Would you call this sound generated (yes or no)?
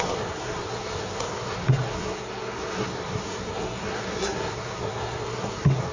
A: yes